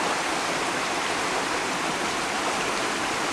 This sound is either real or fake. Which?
real